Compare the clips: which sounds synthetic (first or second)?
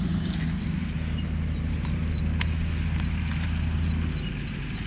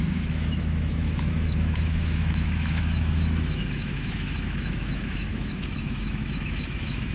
second